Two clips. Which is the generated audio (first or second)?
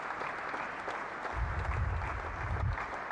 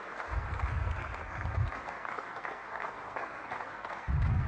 second